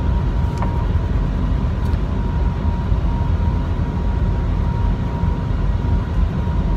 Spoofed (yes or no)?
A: no